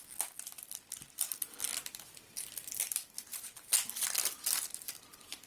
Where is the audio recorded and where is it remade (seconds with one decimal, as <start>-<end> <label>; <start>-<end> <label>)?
0.0-5.5 recorded